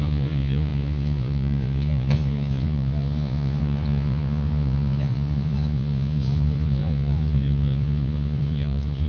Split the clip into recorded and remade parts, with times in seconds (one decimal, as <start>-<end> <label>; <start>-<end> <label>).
0.0-9.1 remade